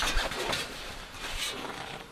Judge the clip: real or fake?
fake